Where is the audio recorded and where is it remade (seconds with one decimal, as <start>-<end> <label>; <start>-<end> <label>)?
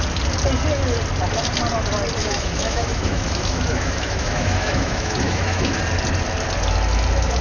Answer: 0.0-2.2 recorded; 2.2-5.8 remade; 5.8-7.4 recorded